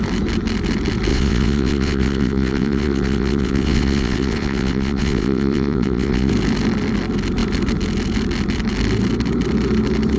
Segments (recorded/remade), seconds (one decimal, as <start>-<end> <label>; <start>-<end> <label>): 0.0-1.1 recorded; 1.1-6.3 remade; 6.3-10.2 recorded